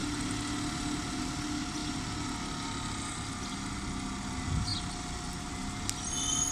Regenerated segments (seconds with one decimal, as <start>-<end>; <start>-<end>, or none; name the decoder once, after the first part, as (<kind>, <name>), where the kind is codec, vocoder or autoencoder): none